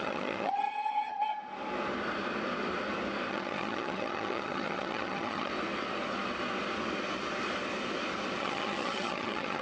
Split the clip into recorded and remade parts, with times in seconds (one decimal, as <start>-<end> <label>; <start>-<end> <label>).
0.0-1.3 remade; 1.3-3.3 recorded; 3.3-5.5 remade; 5.5-8.4 recorded; 8.4-9.6 remade